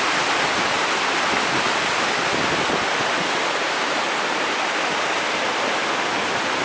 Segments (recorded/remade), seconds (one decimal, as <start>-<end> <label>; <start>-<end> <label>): 0.0-6.6 recorded